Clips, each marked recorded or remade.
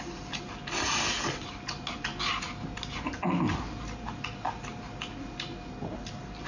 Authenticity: recorded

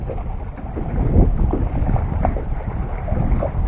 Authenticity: remade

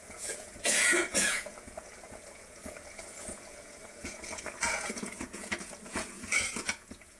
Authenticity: remade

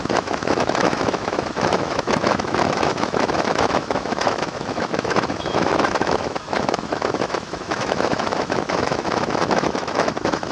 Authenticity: remade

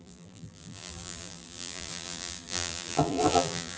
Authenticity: remade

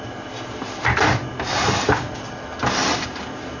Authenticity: recorded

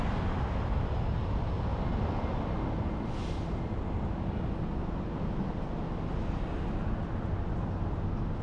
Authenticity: recorded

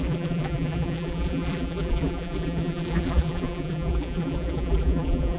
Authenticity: remade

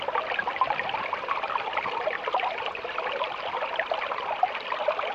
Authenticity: recorded